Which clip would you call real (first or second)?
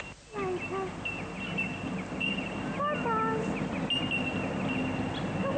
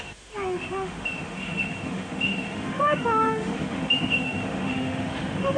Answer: first